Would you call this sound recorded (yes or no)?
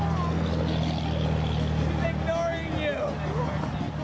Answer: yes